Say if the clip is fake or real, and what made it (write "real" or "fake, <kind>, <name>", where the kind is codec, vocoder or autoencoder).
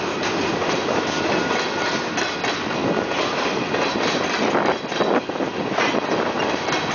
real